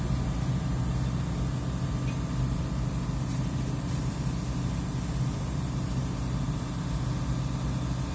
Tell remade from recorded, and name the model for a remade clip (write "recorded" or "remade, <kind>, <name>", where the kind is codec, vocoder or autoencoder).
recorded